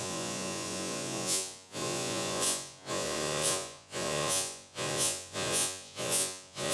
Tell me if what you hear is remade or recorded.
remade